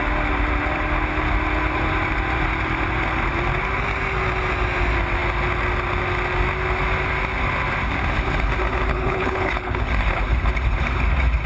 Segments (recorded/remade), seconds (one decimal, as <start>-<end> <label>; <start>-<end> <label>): 0.0-8.9 recorded; 8.9-9.8 remade; 9.8-11.5 recorded